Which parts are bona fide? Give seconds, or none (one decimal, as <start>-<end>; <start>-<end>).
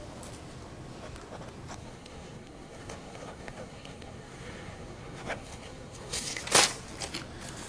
0.0-1.8; 6.4-7.7